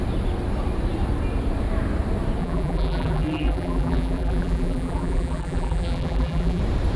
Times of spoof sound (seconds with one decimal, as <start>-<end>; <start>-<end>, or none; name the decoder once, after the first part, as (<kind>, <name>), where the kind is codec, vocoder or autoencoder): 2.4-6.6 (vocoder, BigVGAN v2)